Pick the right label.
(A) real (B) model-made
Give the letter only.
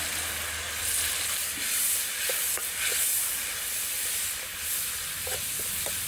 A